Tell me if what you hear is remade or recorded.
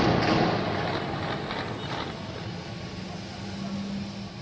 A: recorded